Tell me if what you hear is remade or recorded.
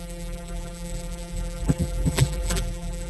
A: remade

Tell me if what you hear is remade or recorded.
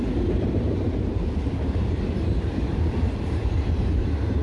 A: remade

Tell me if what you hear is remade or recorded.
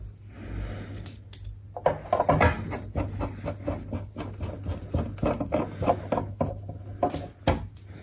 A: recorded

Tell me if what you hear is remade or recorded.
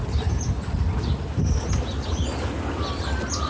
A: recorded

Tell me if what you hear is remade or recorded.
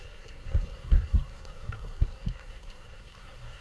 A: remade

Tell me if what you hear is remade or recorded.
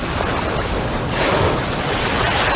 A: remade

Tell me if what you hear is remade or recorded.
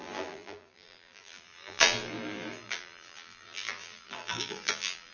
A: remade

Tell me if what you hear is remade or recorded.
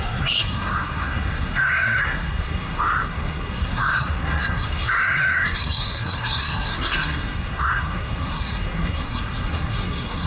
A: remade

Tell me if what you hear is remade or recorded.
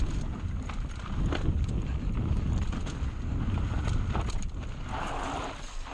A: recorded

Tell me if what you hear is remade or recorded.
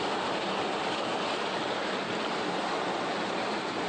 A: recorded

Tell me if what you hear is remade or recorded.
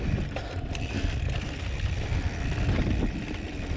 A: recorded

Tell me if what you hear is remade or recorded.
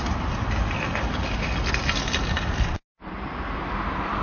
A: recorded